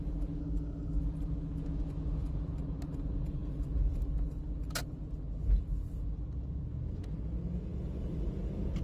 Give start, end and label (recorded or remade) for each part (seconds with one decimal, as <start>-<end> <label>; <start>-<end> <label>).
0.0-0.4 recorded; 0.4-1.0 remade; 1.0-8.8 recorded